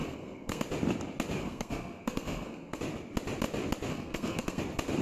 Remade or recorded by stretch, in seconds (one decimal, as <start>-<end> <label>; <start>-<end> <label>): 0.0-0.6 remade; 0.6-1.4 recorded; 1.4-2.8 remade; 2.8-3.9 recorded; 3.9-4.6 remade; 4.6-5.0 recorded